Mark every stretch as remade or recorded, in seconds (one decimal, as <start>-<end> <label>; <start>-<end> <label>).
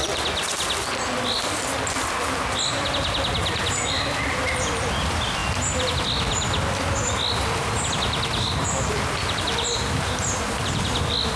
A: 0.0-11.4 recorded